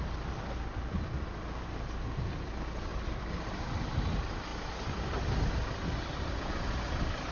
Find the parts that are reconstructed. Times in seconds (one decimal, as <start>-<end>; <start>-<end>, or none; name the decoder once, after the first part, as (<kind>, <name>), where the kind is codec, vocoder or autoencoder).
2.9-3.6 (vocoder, BigVGAN v2)